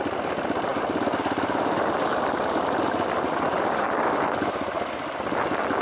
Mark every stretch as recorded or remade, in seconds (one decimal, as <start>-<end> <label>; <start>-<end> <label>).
0.0-5.8 recorded